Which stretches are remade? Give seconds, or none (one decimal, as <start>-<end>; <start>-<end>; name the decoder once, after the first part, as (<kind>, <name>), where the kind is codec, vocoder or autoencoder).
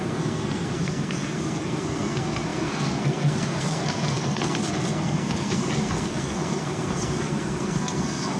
0.0-8.4 (codec, SNAC)